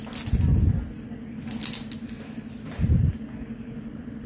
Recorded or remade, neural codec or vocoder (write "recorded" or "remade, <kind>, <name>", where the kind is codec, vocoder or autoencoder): recorded